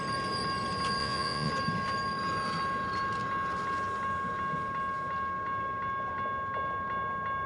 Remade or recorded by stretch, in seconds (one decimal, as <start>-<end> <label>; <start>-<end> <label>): 0.0-1.0 recorded; 1.0-1.5 remade; 1.5-7.5 recorded